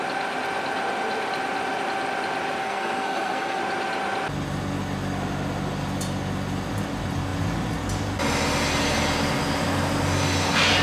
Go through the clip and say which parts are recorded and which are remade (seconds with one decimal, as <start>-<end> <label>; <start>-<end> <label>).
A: 0.0-2.6 recorded; 2.6-3.6 remade; 3.6-10.8 recorded